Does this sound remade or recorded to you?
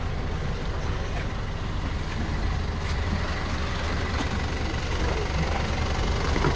recorded